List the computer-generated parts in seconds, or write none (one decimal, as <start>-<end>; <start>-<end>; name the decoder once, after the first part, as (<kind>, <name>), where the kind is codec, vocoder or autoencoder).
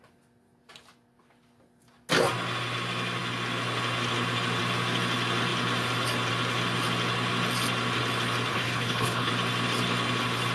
8.5-9.3 (codec, HILCodec)